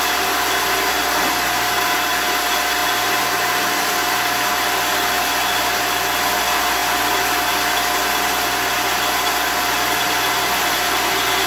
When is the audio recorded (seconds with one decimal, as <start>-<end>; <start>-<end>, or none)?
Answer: 0.0-11.5